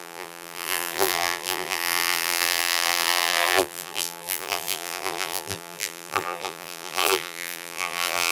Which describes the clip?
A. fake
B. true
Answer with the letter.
A